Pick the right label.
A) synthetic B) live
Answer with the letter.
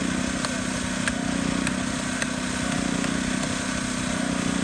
B